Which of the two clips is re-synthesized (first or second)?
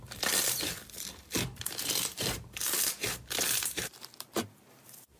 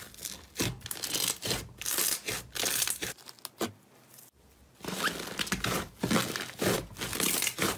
first